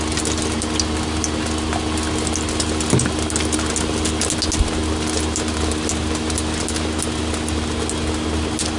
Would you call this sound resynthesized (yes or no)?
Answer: no